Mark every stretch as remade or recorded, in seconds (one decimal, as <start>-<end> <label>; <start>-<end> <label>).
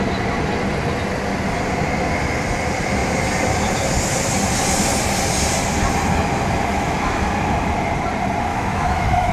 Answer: 0.0-6.7 recorded; 6.7-7.3 remade; 7.3-8.5 recorded; 8.5-9.3 remade